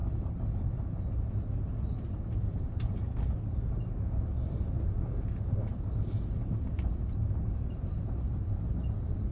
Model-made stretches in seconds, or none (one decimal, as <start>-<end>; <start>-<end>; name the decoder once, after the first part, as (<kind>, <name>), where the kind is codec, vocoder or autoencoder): 4.3-5.0 (vocoder, BigVGAN v2)